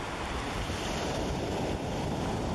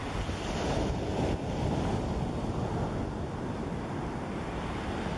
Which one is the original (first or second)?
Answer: second